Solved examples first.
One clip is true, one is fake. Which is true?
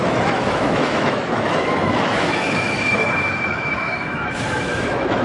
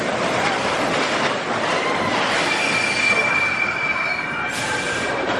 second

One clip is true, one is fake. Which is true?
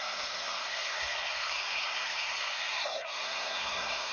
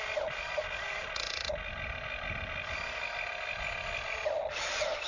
second